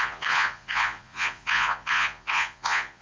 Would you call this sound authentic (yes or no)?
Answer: no